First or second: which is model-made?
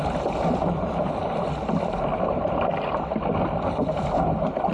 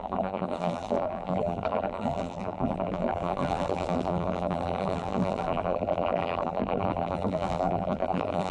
second